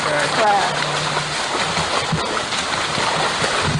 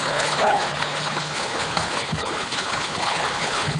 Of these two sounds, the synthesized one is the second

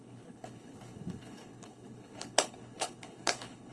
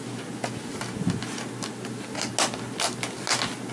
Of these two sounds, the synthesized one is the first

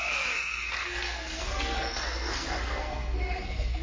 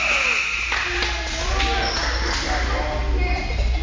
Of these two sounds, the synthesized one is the first